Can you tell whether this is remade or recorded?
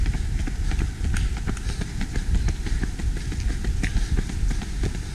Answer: recorded